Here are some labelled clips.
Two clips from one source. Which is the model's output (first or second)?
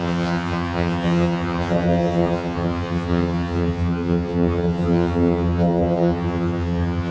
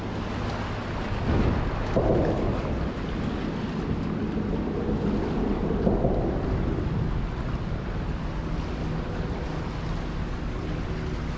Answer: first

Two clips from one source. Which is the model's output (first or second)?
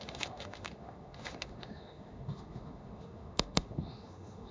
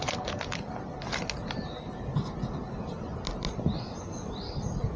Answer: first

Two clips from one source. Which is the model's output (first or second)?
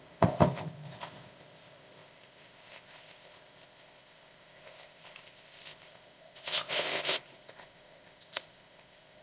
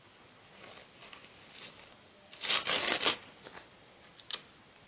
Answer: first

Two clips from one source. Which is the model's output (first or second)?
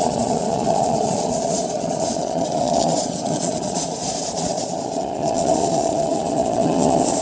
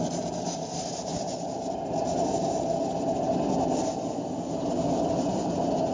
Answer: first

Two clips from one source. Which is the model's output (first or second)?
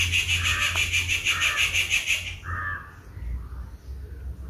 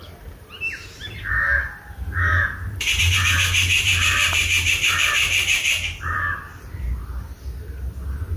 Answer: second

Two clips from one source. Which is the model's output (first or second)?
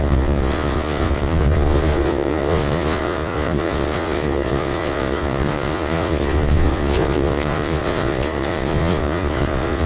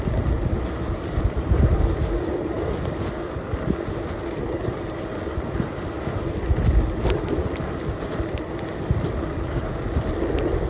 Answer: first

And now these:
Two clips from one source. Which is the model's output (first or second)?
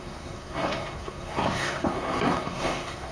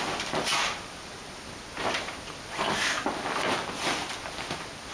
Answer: first